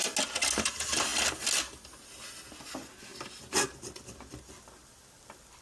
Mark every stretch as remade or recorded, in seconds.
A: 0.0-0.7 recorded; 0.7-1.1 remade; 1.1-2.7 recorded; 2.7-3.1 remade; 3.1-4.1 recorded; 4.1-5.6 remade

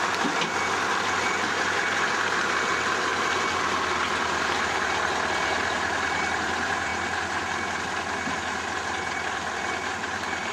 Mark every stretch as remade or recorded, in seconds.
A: 0.0-3.1 remade; 3.1-3.7 recorded; 3.7-6.9 remade; 6.9-9.6 recorded; 9.6-10.5 remade

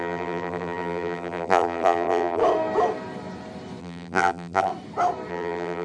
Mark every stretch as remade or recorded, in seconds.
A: 0.0-2.4 remade; 2.4-3.8 recorded; 3.8-4.7 remade; 4.7-5.3 recorded; 5.3-5.8 remade

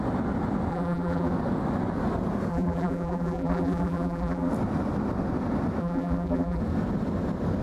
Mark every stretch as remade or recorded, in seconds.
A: 0.0-0.7 recorded; 0.7-1.3 remade; 1.3-2.5 recorded; 2.5-4.5 remade; 4.5-5.8 recorded; 5.8-6.6 remade; 6.6-7.6 recorded